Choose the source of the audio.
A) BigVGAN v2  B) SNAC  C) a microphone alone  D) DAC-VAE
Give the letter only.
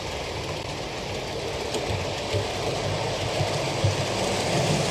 C